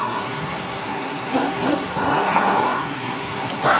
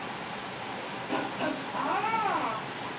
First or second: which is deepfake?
first